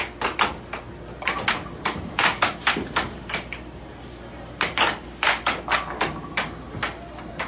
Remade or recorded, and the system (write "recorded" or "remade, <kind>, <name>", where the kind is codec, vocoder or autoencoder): recorded